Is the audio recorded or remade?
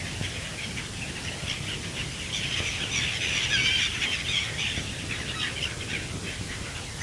recorded